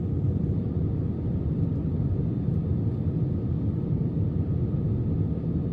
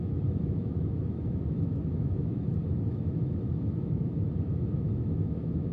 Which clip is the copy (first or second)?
second